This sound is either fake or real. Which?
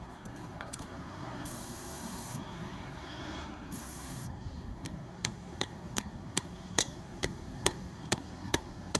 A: fake